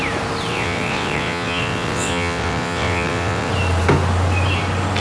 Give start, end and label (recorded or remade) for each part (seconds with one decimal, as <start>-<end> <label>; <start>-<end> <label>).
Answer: 0.0-0.5 recorded; 0.5-3.5 remade; 3.5-5.0 recorded